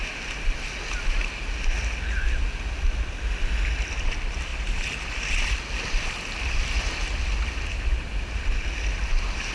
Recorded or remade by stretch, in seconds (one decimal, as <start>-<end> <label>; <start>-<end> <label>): 0.0-9.5 recorded